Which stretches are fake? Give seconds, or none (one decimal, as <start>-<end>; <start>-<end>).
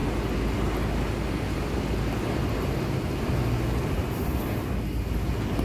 none